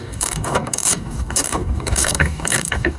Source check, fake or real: fake